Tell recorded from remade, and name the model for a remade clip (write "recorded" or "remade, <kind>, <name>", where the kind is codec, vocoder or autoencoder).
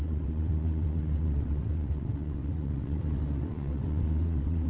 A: remade, vocoder, WaveNeXt